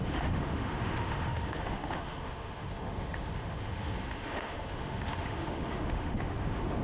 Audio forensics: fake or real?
fake